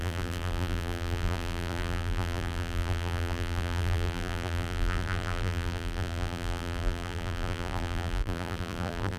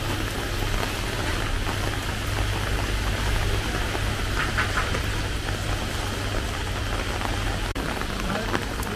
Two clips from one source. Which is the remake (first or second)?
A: first